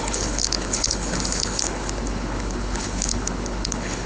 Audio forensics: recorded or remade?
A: remade